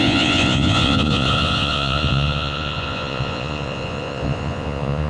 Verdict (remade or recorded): remade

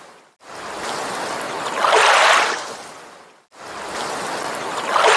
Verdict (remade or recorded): recorded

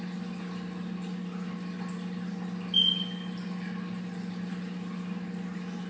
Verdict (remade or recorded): recorded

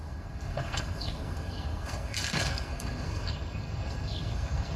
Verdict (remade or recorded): remade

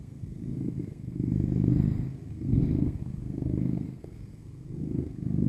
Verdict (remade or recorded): remade